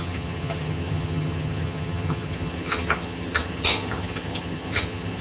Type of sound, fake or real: fake